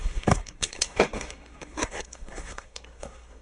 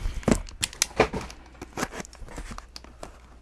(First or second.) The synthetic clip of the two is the first